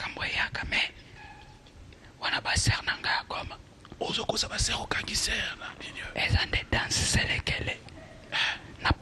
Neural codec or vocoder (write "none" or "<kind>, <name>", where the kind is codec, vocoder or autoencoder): none